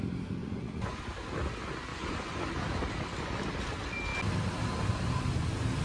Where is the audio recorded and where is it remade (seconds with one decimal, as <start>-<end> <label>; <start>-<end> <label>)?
0.0-0.4 recorded; 0.4-1.0 remade; 1.0-1.9 recorded; 1.9-2.4 remade; 2.4-5.8 recorded